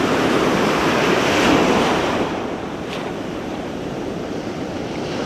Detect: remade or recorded remade